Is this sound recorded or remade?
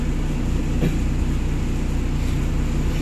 recorded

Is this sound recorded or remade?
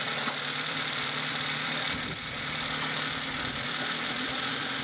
remade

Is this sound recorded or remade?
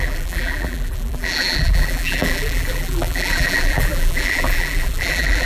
remade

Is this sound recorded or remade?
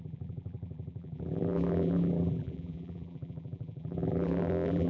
remade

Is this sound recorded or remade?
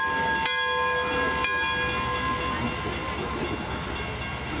recorded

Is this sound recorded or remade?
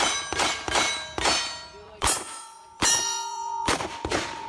remade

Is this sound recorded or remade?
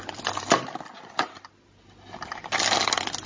recorded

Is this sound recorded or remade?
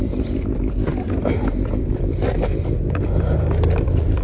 recorded